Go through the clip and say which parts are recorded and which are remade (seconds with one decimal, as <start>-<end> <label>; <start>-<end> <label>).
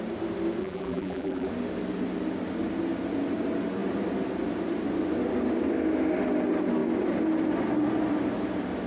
0.0-0.6 recorded; 0.6-1.5 remade; 1.5-8.9 recorded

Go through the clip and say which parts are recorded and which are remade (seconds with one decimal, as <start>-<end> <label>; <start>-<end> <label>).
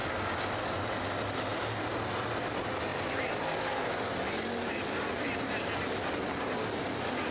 0.0-2.9 recorded; 2.9-6.6 remade; 6.6-7.3 recorded